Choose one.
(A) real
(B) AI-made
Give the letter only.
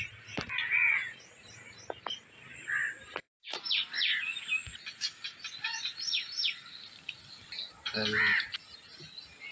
A